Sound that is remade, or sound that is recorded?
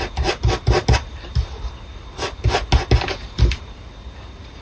recorded